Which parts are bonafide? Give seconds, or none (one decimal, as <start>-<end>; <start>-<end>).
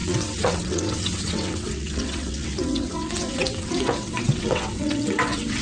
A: none